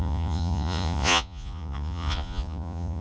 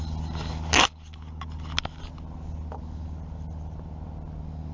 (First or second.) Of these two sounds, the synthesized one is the first